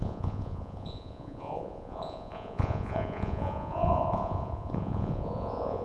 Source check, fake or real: fake